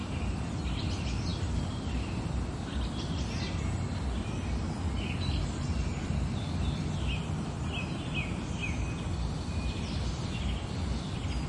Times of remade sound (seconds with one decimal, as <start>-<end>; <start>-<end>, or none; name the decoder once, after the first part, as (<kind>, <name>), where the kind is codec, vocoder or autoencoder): none